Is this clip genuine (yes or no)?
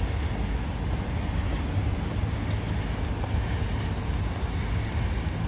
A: yes